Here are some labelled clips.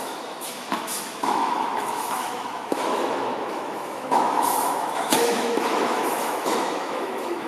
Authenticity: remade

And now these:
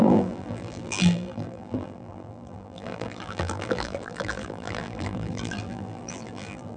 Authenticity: remade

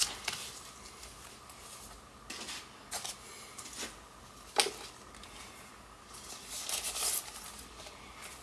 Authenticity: recorded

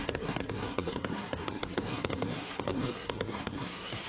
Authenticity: remade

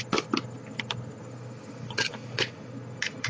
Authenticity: recorded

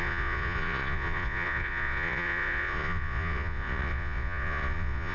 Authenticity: remade